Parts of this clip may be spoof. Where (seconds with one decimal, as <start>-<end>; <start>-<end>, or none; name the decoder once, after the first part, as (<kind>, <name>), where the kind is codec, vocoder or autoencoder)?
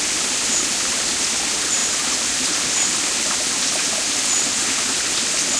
none